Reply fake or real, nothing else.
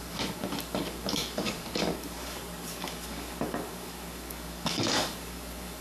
fake